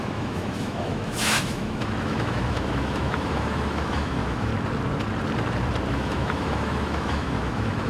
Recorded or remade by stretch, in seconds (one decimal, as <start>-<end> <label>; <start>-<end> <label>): 0.0-4.5 remade; 4.5-5.9 recorded; 5.9-7.9 remade